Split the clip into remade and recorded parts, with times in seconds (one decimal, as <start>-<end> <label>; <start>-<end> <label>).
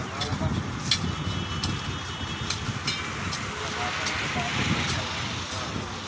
0.0-6.1 recorded